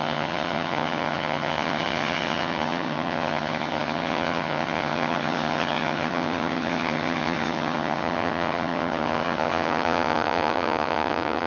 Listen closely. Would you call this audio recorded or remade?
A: remade